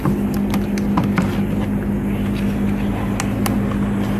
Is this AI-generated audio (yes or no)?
no